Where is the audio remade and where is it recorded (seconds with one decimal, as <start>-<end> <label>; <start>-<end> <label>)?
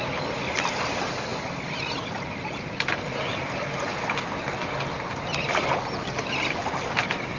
0.0-7.4 recorded